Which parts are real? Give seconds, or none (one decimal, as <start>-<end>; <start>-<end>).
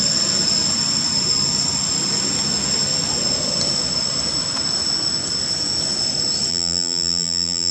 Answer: 0.0-6.5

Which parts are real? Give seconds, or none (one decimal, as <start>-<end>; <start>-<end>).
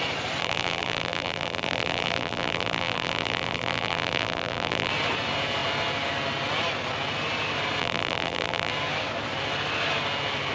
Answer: 0.0-0.4; 4.9-7.8; 8.7-10.5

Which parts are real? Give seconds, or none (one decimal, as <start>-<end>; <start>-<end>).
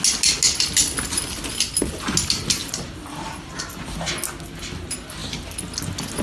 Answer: 0.0-2.6; 3.6-6.2